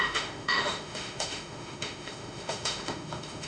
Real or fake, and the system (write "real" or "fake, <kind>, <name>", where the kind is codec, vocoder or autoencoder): fake, autoencoder, DAC-VAE